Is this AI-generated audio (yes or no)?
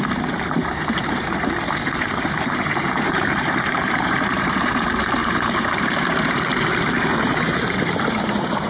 yes